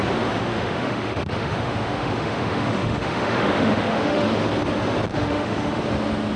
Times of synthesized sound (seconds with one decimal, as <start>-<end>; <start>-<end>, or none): 0.5-4.3; 5.1-5.8

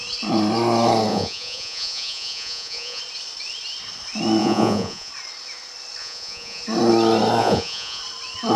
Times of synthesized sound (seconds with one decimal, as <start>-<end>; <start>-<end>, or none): 1.1-3.0; 4.4-5.1; 6.0-6.6; 7.4-8.0

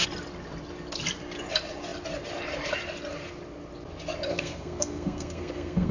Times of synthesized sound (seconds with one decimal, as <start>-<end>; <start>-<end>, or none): 4.3-5.9

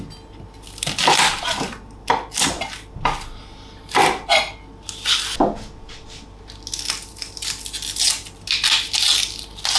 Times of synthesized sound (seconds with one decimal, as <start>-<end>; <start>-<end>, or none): none

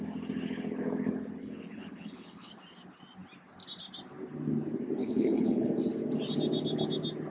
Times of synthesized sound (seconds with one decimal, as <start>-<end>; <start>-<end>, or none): 1.4-2.5; 5.0-5.7

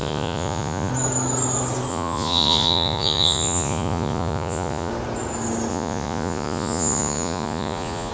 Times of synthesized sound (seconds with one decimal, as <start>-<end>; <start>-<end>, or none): 0.0-0.9; 1.9-4.9; 5.7-8.1

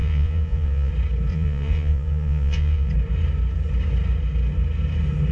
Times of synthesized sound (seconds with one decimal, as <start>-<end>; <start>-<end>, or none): 0.0-0.9; 1.3-2.9